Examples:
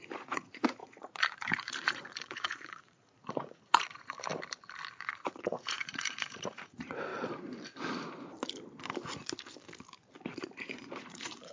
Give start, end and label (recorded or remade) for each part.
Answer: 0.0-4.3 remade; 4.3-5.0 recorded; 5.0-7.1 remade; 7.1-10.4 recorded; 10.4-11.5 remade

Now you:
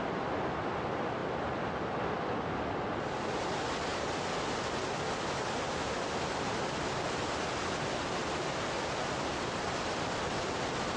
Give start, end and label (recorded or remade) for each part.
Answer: 0.0-11.0 recorded

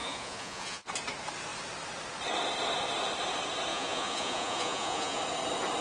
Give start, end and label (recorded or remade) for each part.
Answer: 0.0-0.9 remade; 0.9-3.7 recorded; 3.7-5.2 remade; 5.2-5.8 recorded

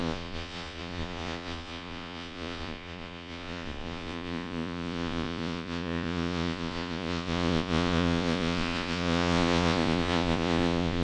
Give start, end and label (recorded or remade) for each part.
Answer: 0.0-11.0 remade

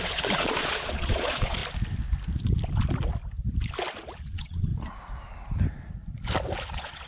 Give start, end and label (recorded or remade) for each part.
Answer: 0.0-1.6 remade; 1.6-4.2 recorded; 4.2-4.7 remade; 4.7-6.6 recorded; 6.6-7.1 remade

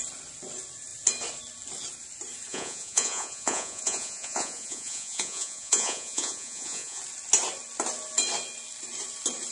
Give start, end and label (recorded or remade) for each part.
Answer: 0.0-2.5 recorded; 2.5-7.0 remade; 7.0-9.5 recorded